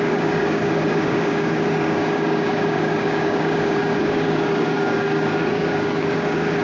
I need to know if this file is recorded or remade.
remade